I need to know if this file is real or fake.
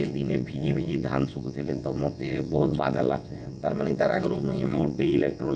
fake